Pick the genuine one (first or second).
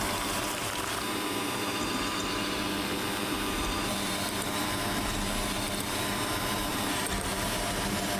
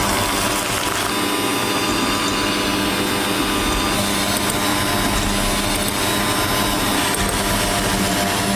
second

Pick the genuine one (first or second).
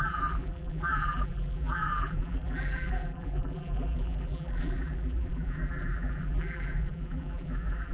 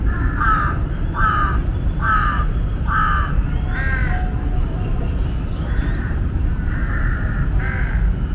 second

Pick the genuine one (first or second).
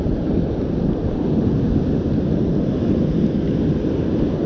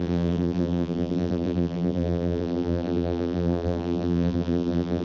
first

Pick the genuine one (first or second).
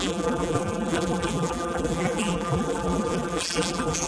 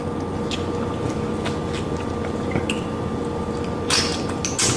second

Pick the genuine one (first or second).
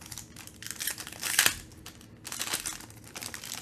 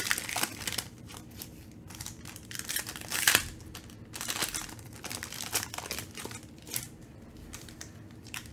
first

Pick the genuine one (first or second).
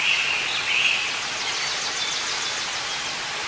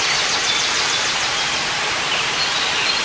first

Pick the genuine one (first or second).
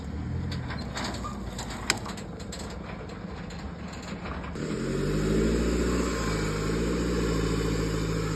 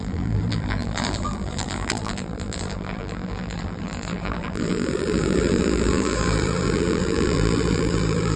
first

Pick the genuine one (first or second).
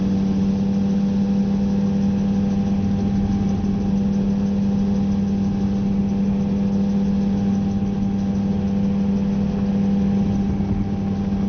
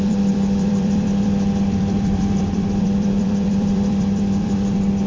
first